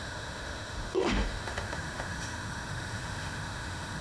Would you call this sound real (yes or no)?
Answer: no